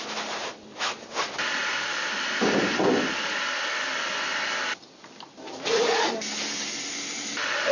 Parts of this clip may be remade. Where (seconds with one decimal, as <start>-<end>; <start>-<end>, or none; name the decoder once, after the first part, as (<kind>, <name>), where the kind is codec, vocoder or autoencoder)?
none